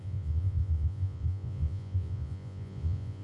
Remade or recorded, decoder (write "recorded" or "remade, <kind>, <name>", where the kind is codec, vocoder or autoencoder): remade, vocoder, Vocos